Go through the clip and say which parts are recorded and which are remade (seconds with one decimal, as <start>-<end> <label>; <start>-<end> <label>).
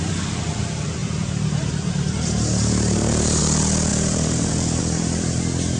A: 0.0-1.0 recorded; 1.0-3.4 remade; 3.4-3.9 recorded; 3.9-4.8 remade; 4.8-5.8 recorded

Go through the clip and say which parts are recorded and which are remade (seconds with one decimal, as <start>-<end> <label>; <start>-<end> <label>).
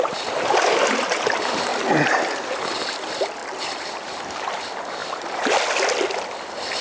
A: 0.0-3.4 recorded; 3.4-4.6 remade; 4.6-5.0 recorded; 5.0-5.6 remade; 5.6-6.8 recorded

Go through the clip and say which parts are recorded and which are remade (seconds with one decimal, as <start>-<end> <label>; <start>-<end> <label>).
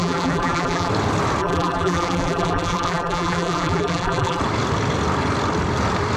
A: 0.0-0.9 remade; 0.9-1.4 recorded; 1.4-4.4 remade; 4.4-6.2 recorded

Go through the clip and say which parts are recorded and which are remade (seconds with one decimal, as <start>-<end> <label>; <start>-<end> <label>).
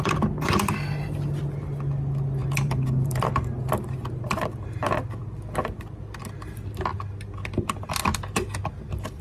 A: 0.0-2.4 recorded; 2.4-4.4 remade; 4.4-9.2 recorded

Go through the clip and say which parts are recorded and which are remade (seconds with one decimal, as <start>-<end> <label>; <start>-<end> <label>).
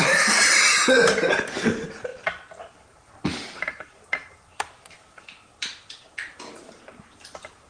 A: 0.0-2.1 remade; 2.1-2.6 recorded; 2.6-7.7 remade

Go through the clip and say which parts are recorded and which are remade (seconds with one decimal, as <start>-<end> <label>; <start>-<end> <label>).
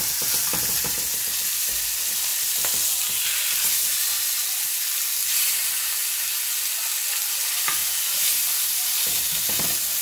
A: 0.0-2.3 recorded; 2.3-4.3 remade; 4.3-6.0 recorded; 6.0-6.6 remade; 6.6-10.0 recorded